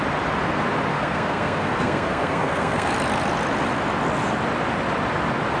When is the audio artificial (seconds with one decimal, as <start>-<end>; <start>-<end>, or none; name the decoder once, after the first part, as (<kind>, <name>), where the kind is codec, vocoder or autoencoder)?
0.9-2.9 (codec, SNAC)